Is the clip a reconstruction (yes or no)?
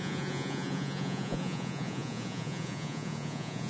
yes